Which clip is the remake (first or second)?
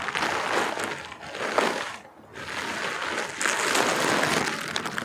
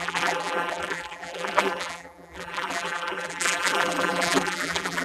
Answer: second